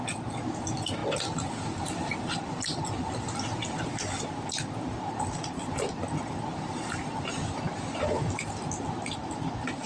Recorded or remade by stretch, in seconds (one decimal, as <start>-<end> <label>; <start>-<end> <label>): 0.0-9.9 recorded